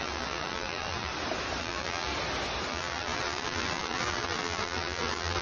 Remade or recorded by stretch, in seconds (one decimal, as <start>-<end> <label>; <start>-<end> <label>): 0.0-1.1 remade; 1.1-1.6 recorded; 1.6-2.1 remade; 2.1-2.7 recorded; 2.7-5.4 remade